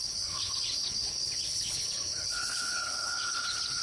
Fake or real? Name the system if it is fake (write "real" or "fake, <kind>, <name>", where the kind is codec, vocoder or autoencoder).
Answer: fake, codec, HILCodec